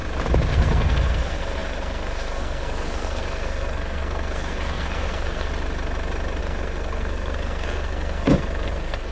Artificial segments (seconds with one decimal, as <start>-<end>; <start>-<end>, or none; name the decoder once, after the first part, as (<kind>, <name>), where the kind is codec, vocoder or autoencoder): 0.5-5.5 (codec, SNAC); 6.4-9.1